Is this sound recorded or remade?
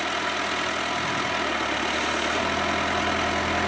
recorded